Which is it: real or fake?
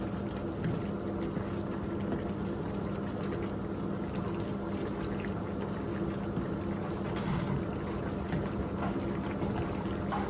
real